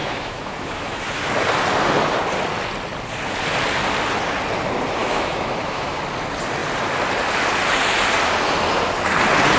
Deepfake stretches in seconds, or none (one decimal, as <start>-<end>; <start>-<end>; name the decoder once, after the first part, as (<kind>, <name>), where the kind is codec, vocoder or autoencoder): 0.0-1.3 (autoencoder, DAC-VAE); 5.0-6.0